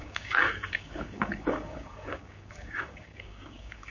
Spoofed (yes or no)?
yes